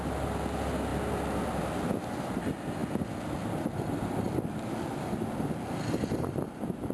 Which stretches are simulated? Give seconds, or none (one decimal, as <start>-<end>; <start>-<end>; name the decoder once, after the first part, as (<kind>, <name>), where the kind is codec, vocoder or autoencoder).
none